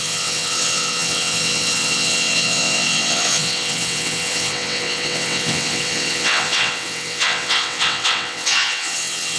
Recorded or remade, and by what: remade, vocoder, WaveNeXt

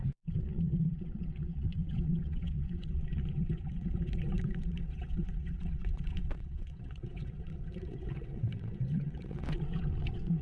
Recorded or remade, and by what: remade, vocoder, WaveNeXt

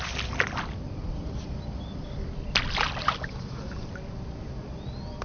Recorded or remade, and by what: recorded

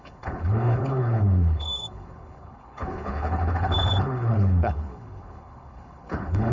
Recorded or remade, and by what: remade, codec, HILCodec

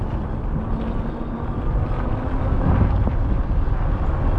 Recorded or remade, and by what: recorded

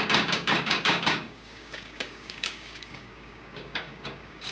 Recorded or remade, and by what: remade, codec, DAC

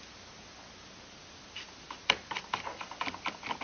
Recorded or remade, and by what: recorded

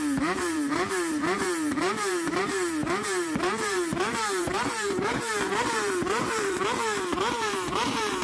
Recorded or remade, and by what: remade, vocoder, BigVGAN v2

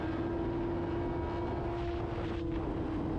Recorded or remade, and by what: recorded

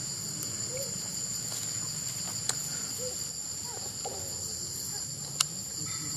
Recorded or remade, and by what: recorded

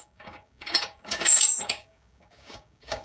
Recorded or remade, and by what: remade, codec, DAC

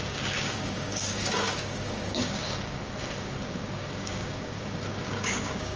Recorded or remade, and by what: remade, codec, DAC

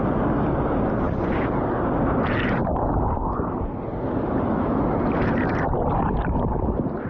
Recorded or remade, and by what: recorded